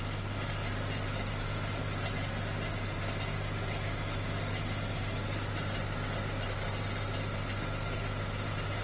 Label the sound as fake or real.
real